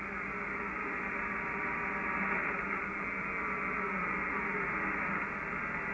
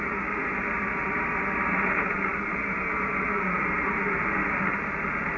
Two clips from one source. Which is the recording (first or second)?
first